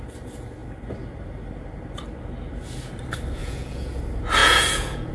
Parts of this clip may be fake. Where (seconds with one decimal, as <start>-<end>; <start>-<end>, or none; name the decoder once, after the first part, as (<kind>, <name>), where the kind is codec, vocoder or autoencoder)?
3.4-4.0 (vocoder, Vocos); 4.4-5.1